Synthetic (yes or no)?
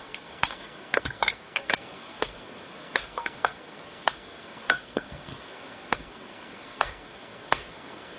yes